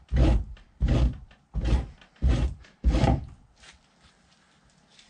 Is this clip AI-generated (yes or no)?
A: no